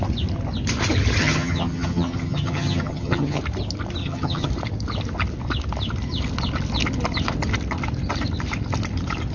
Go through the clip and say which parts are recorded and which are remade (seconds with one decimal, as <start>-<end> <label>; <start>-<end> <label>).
0.0-1.2 recorded; 1.2-3.4 remade; 3.4-4.0 recorded; 4.0-4.5 remade; 4.5-9.3 recorded